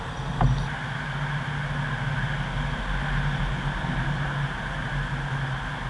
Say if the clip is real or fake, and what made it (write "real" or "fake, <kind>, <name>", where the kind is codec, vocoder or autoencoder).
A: real